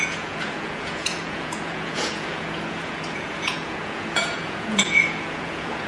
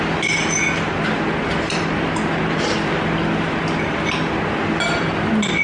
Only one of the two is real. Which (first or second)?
second